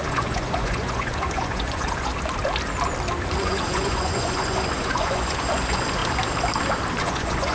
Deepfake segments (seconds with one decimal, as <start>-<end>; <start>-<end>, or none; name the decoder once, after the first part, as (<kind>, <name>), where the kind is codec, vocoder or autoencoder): 0.0-2.1 (vocoder, Vocos); 3.4-6.0; 7.0-7.5